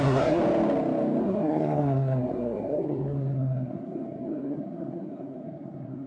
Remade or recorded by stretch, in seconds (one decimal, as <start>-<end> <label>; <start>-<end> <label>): 0.0-0.4 remade; 0.4-1.2 recorded; 1.2-6.1 remade